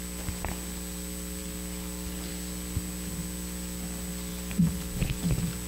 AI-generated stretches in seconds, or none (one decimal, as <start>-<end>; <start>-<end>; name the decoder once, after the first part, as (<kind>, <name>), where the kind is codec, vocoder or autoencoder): 1.4-2.3 (vocoder, BigVGAN v2); 4.3-5.2